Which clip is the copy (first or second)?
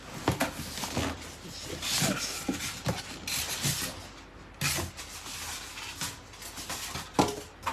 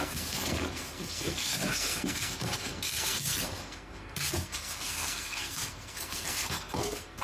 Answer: second